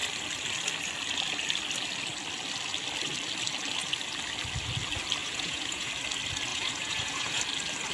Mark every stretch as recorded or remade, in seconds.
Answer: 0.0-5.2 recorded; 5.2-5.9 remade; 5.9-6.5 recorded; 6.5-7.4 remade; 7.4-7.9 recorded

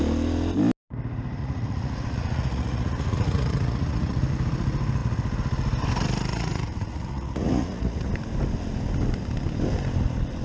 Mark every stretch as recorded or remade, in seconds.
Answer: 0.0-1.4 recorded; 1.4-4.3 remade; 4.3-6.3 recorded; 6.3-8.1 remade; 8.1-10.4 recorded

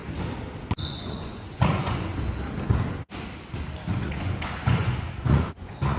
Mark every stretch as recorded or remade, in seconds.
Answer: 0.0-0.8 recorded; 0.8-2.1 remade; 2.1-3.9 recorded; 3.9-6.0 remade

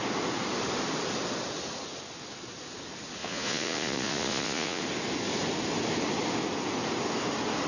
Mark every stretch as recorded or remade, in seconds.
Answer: 0.0-3.2 recorded; 3.2-4.8 remade; 4.8-7.7 recorded

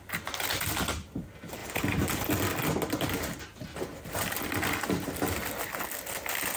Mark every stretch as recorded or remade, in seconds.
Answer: 0.0-6.6 recorded

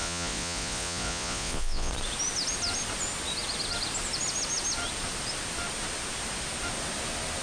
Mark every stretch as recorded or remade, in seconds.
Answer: 0.0-1.9 remade; 1.9-7.4 recorded